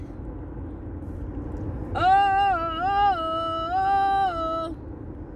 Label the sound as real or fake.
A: real